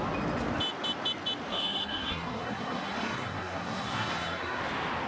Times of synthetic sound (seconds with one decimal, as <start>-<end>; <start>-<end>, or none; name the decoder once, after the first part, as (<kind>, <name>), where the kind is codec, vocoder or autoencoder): 1.5-4.6 (codec, SNAC)